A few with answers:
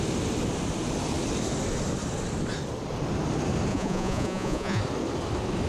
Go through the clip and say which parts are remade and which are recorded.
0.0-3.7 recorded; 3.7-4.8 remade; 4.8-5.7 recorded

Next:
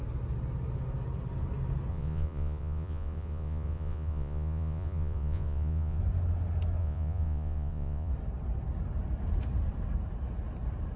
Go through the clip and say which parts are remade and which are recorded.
0.0-1.9 recorded; 1.9-6.0 remade; 6.0-6.8 recorded; 6.8-8.1 remade; 8.1-11.0 recorded

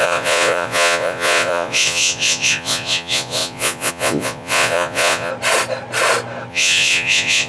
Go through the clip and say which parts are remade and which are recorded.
0.0-5.3 remade; 5.3-6.5 recorded; 6.5-7.5 remade

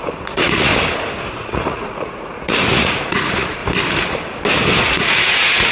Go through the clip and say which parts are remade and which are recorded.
0.0-0.7 remade; 0.7-1.3 recorded; 1.3-3.6 remade; 3.6-4.8 recorded; 4.8-5.7 remade

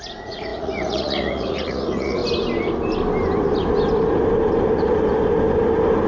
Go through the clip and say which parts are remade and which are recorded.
0.0-2.2 remade; 2.2-6.1 recorded